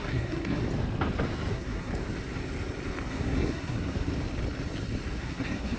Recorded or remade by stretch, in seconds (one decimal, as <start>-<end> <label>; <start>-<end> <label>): 0.0-0.6 remade; 0.6-1.5 recorded; 1.5-1.9 remade; 1.9-3.1 recorded; 3.1-4.1 remade; 4.1-5.2 recorded; 5.2-5.8 remade